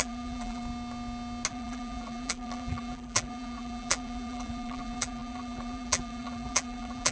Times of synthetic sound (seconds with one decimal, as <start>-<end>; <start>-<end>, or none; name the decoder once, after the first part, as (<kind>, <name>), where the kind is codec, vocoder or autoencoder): 0.0-0.6 (vocoder, BigVGAN v2); 1.5-7.1